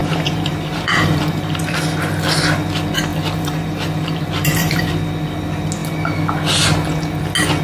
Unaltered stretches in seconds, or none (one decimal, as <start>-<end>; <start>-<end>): 1.6-3.1; 4.9-7.6